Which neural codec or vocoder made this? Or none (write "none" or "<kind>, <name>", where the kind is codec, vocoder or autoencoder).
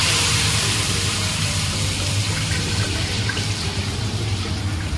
vocoder, BigVGAN v2